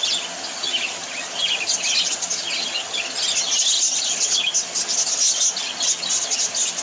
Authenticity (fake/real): real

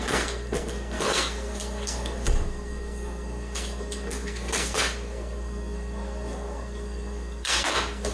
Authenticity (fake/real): fake